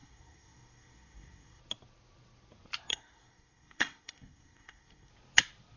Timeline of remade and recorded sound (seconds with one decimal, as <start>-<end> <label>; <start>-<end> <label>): 0.0-1.6 remade; 1.6-2.9 recorded; 2.9-5.1 remade; 5.1-5.8 recorded